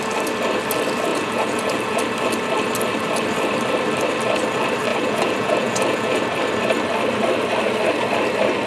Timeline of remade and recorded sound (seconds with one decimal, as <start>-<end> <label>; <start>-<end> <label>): 0.0-1.1 recorded; 1.1-2.0 remade; 2.0-4.9 recorded; 4.9-6.2 remade; 6.2-8.7 recorded